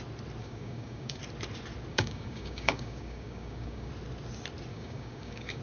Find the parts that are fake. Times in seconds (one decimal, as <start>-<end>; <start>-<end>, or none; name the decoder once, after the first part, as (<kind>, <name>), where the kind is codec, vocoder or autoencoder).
0.4-1.2 (codec, DAC); 1.9-3.9; 4.7-5.6